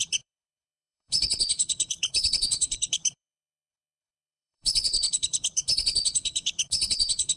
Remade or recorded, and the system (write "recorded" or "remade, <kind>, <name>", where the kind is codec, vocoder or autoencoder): remade, codec, HILCodec